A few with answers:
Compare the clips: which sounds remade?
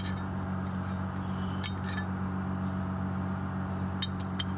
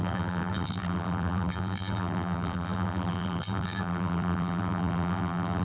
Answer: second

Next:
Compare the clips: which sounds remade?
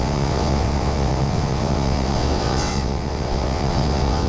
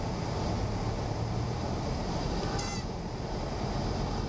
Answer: first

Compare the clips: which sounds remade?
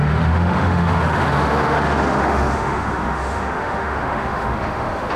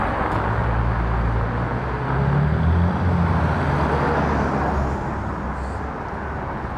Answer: first